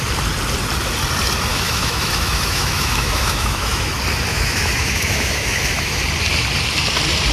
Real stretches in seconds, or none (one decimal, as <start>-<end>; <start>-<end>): 0.0-1.5; 3.9-4.3; 6.0-7.3